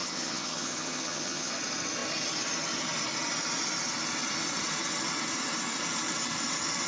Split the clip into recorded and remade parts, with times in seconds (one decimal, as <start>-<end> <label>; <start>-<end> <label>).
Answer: 0.0-1.5 remade; 1.5-6.9 recorded